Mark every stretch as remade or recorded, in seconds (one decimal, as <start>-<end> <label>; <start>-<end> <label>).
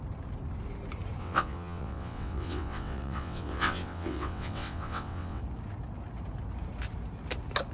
0.0-1.2 recorded; 1.2-5.4 remade; 5.4-7.7 recorded